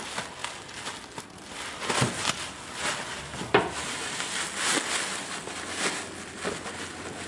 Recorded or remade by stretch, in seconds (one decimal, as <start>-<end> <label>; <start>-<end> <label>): 0.0-7.3 recorded